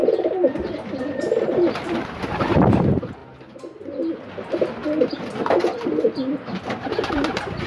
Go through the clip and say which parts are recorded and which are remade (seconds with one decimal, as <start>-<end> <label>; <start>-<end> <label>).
0.0-1.0 recorded; 1.0-3.2 remade; 3.2-7.1 recorded; 7.1-7.7 remade